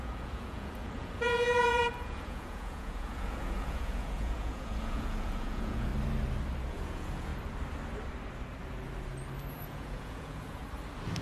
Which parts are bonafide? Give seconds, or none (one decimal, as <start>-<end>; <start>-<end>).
5.9-6.7; 7.3-9.5; 10.6-11.2